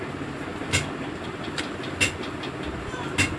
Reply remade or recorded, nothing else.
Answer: recorded